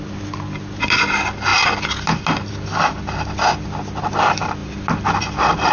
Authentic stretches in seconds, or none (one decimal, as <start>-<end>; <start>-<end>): 0.0-5.7